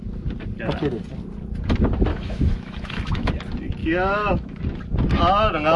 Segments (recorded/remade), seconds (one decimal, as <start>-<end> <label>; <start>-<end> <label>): 0.0-2.1 recorded; 2.1-3.3 remade; 3.3-3.8 recorded; 3.8-4.6 remade; 4.6-5.8 recorded